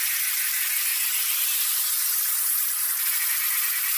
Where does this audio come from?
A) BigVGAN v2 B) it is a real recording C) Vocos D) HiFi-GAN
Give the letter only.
B